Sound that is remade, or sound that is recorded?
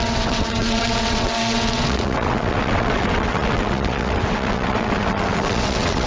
remade